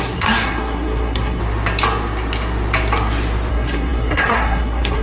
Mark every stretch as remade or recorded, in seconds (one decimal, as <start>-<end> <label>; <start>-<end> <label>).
0.0-1.4 remade; 1.4-3.5 recorded; 3.5-5.0 remade

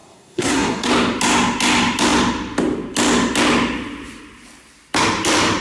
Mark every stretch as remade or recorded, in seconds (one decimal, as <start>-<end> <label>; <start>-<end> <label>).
0.0-0.9 remade; 0.9-5.6 recorded

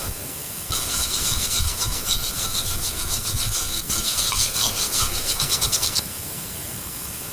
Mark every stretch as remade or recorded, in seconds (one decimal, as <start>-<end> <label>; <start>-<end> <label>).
0.0-7.3 remade